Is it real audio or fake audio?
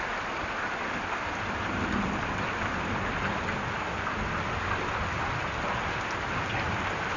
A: real